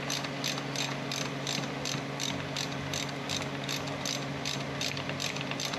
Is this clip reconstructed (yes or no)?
no